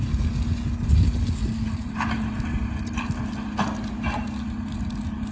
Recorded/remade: recorded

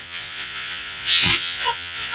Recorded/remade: remade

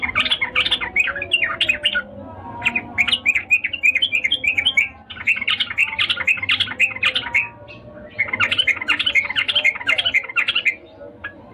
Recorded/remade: recorded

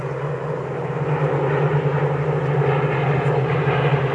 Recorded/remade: recorded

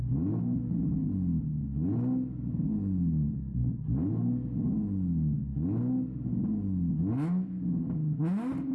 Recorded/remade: recorded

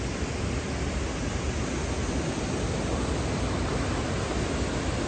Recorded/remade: recorded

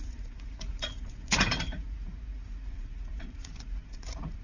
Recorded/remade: remade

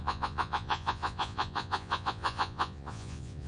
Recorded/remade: remade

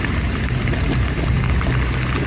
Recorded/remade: recorded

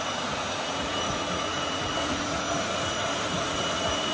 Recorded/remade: remade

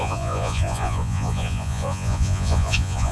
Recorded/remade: remade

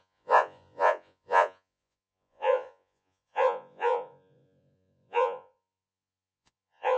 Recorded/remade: remade